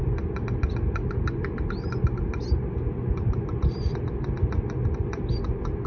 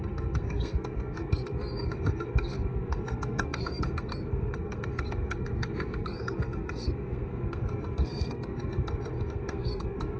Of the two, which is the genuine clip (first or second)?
first